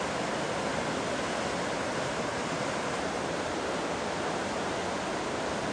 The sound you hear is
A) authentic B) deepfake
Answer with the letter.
A